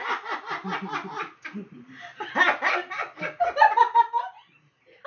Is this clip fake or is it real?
real